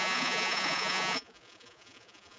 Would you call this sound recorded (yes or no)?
no